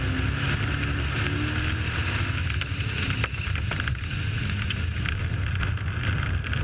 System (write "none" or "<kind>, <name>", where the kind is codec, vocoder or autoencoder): none